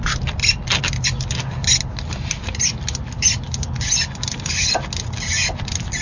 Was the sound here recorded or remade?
recorded